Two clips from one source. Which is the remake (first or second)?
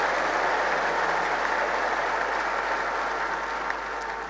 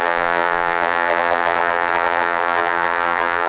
second